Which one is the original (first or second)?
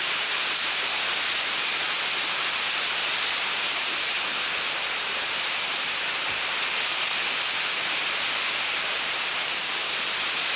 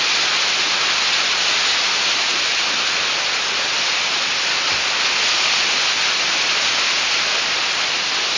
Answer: second